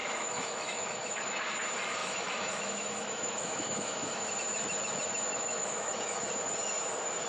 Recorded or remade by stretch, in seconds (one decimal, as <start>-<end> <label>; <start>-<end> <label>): 0.0-1.4 remade; 1.4-2.0 recorded; 2.0-4.3 remade; 4.3-5.3 recorded; 5.3-6.3 remade; 6.3-7.3 recorded